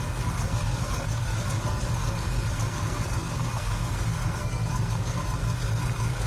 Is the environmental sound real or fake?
fake